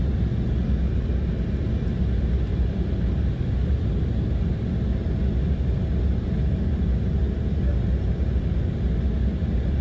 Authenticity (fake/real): real